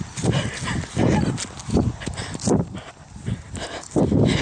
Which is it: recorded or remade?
recorded